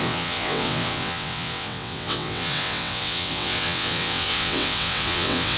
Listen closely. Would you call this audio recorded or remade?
remade